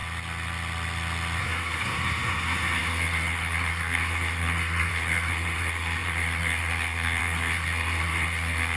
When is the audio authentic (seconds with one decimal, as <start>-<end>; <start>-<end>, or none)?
0.0-1.4